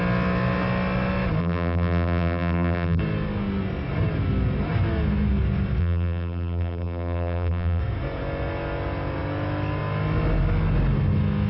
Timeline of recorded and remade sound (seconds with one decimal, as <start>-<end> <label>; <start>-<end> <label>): 0.0-1.4 recorded; 1.4-3.0 remade; 3.0-5.8 recorded; 5.8-7.8 remade; 7.8-11.5 recorded